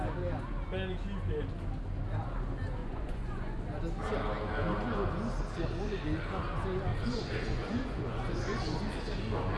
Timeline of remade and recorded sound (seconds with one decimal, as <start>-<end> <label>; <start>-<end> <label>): 0.0-2.8 recorded; 2.8-3.6 remade; 3.6-6.9 recorded; 6.9-8.8 remade; 8.8-9.6 recorded